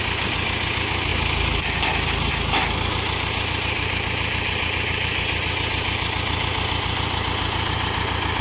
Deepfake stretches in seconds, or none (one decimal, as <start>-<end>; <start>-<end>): none